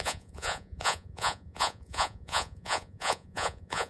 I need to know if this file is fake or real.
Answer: fake